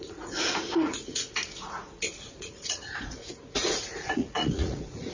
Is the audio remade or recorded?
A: remade